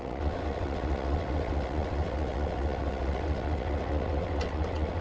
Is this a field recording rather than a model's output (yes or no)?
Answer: no